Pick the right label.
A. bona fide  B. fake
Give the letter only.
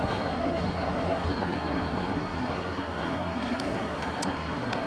B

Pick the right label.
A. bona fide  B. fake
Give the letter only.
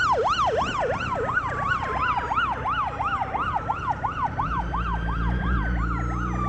A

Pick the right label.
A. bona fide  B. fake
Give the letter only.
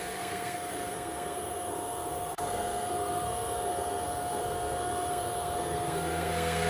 B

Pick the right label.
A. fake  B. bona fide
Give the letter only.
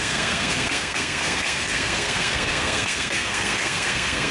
A